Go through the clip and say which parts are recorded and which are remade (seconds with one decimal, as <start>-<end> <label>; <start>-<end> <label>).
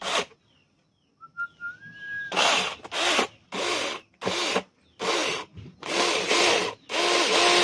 0.0-7.6 recorded